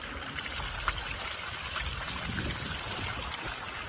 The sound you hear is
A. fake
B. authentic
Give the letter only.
B